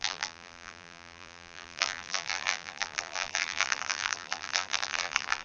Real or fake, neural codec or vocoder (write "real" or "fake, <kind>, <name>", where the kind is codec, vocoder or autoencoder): fake, vocoder, BigVGAN v2